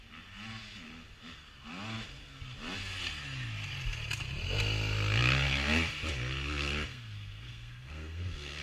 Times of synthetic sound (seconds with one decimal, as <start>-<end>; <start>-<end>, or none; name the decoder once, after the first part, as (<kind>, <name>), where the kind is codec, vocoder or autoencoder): 6.9-8.6 (codec, SNAC)